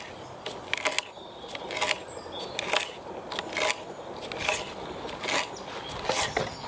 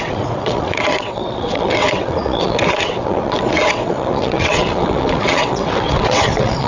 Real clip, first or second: first